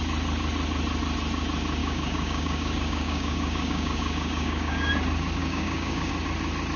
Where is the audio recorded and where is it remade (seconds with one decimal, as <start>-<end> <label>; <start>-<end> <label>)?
0.0-1.8 recorded; 1.8-4.9 remade; 4.9-5.4 recorded; 5.4-6.1 remade; 6.1-6.8 recorded